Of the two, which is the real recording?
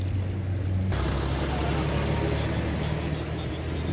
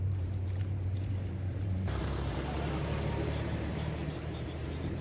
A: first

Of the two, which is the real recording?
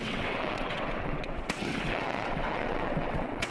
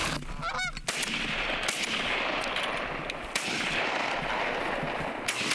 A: second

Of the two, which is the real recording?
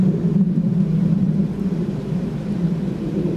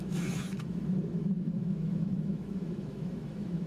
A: first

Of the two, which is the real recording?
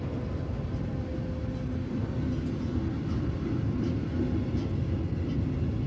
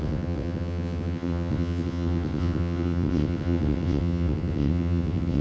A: first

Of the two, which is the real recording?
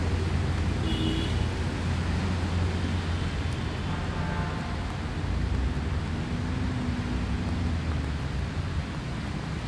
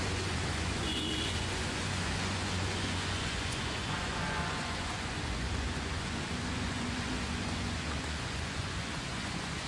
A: first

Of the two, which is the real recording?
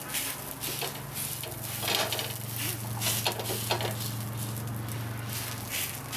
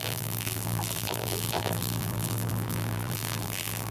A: first